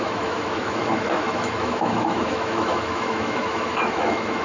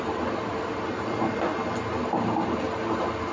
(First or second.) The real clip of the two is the second